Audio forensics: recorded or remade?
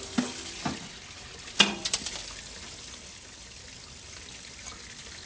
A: recorded